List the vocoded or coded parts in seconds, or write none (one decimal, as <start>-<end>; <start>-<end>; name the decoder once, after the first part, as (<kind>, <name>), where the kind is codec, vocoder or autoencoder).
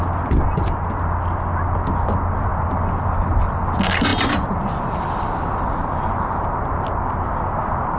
none